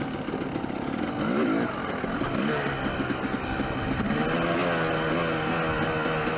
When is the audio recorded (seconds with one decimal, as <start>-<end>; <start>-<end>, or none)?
0.0-6.4